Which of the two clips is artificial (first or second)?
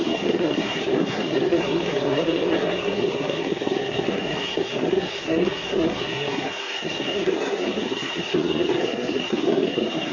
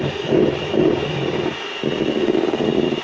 first